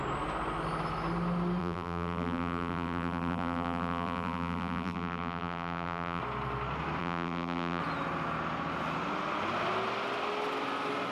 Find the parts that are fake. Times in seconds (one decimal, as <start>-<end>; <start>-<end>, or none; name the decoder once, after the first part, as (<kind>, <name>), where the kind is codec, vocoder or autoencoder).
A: 1.6-6.2 (vocoder, BigVGAN v2); 7.0-7.8